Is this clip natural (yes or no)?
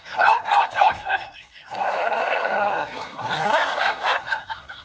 no